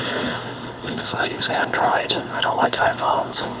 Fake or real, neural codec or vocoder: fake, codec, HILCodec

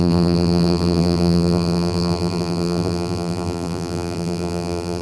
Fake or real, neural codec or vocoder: fake, vocoder, BigVGAN v2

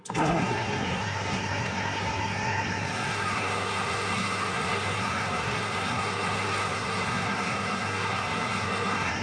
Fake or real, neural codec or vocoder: fake, codec, SNAC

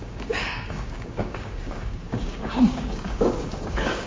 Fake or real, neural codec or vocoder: fake, codec, DAC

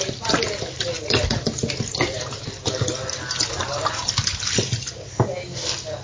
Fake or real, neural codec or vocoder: real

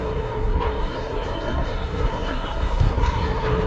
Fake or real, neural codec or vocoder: fake, codec, SNAC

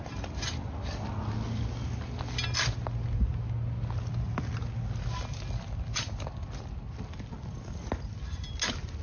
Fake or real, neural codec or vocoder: real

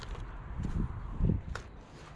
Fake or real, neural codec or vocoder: fake, vocoder, BigVGAN v2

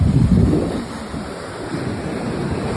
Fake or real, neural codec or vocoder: real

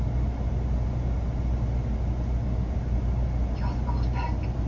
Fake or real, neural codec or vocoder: real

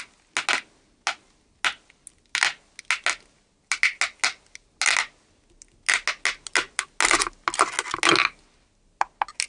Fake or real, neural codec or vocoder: real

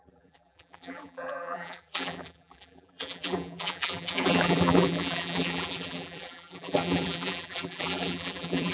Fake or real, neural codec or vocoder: fake, vocoder, BigVGAN v2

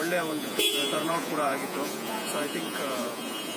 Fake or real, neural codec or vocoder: fake, vocoder, Vocos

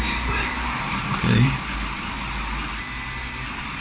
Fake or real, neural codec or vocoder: real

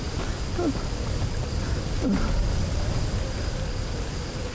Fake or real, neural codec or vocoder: real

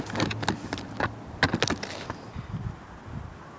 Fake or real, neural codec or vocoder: real